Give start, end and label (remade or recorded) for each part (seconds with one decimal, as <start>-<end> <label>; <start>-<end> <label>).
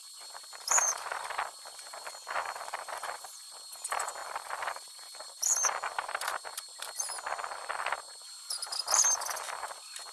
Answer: 0.0-3.5 remade; 3.5-4.2 recorded; 4.2-6.1 remade; 6.1-10.1 recorded